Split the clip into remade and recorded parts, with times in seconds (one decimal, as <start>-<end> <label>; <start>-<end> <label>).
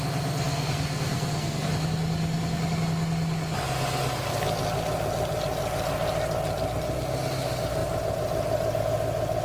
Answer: 0.0-0.5 recorded; 0.5-1.7 remade; 1.7-9.4 recorded